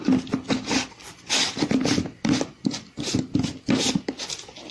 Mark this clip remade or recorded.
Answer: recorded